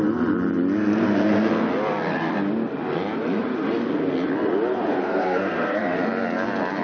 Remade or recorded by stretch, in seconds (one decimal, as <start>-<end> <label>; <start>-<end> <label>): 0.0-4.9 recorded; 4.9-5.8 remade; 5.8-6.8 recorded